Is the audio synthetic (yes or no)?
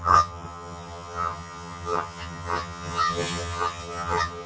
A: yes